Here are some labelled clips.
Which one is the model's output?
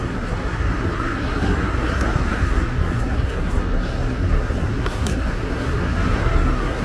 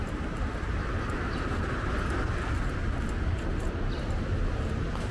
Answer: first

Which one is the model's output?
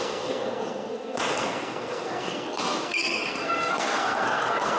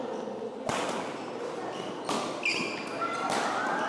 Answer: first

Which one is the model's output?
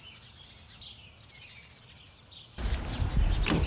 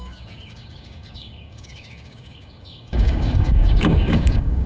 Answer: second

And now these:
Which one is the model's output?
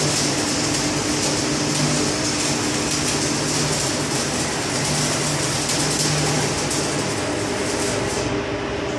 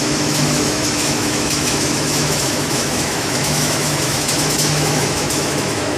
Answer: second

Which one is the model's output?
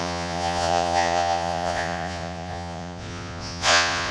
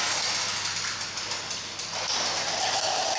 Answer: first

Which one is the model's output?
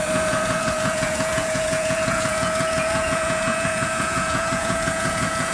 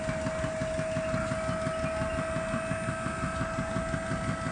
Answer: first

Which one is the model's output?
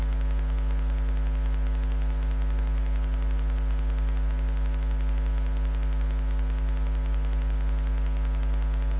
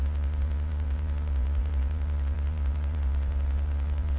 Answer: second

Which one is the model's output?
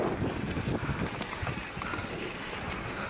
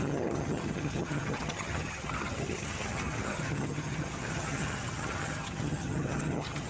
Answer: second